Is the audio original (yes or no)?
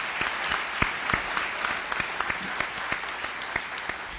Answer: yes